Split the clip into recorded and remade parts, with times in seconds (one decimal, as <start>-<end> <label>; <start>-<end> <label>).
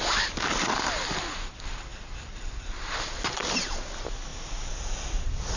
0.0-5.6 recorded